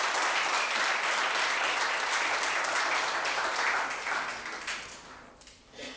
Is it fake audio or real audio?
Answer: real